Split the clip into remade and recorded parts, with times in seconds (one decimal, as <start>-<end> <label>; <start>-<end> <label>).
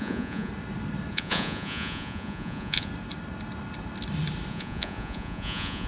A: 0.0-0.5 remade; 0.5-1.1 recorded; 1.1-2.9 remade; 2.9-4.5 recorded; 4.5-5.9 remade